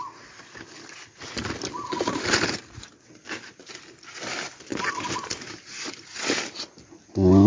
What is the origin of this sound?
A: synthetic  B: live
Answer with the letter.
B